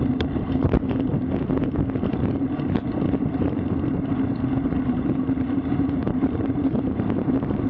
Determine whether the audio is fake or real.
fake